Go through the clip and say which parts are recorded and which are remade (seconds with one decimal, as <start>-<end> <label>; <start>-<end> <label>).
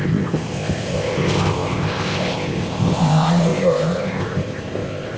0.0-5.2 remade